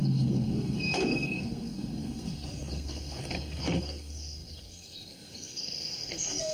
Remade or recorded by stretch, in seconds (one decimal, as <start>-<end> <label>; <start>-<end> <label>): 0.0-6.5 remade